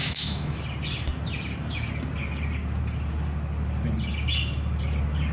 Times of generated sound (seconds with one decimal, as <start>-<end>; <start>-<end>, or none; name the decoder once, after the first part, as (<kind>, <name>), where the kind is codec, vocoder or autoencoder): 0.0-0.6 (autoencoder, DAC-VAE)